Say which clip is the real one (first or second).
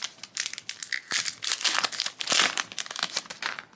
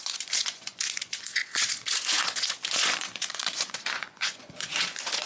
first